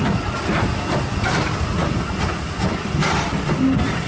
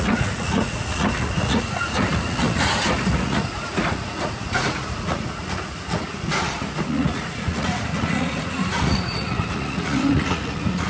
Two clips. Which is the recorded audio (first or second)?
first